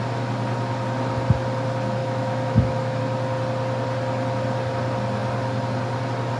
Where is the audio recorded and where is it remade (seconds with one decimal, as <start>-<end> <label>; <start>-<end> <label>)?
0.0-2.0 recorded; 2.0-3.0 remade; 3.0-6.4 recorded